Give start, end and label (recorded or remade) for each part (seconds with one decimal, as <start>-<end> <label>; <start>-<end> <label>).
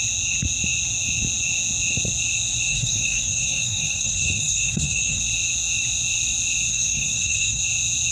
0.0-2.7 recorded; 2.7-5.2 remade; 5.2-6.7 recorded; 6.7-7.6 remade; 7.6-8.1 recorded